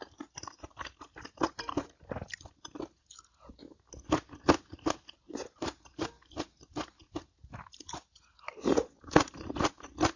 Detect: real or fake real